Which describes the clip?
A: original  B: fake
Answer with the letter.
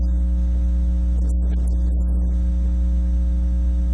A